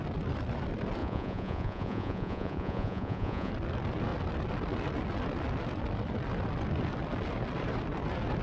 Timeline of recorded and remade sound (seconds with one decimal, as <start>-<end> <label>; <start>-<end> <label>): 0.0-1.0 recorded; 1.0-3.5 remade; 3.5-8.4 recorded